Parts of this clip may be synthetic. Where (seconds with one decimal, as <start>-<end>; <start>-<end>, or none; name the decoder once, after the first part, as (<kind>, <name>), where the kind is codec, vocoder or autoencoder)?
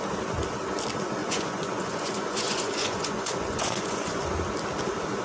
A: 1.2-4.3 (vocoder, Vocos)